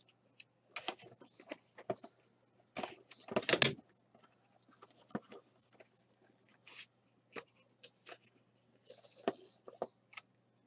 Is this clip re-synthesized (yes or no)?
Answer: no